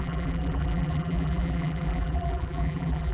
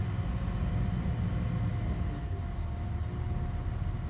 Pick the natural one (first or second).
second